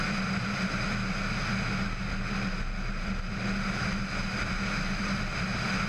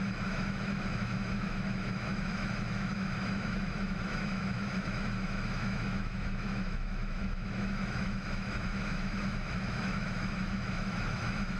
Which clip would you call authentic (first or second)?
first